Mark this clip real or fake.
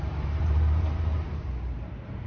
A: fake